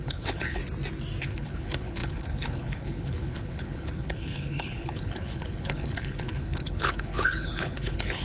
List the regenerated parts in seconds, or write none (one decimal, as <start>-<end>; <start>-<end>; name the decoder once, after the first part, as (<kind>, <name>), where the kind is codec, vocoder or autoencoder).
0.0-0.6 (codec, HILCodec); 1.2-8.2